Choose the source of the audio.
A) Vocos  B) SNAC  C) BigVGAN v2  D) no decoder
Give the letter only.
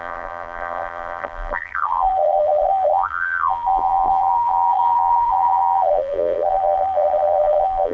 C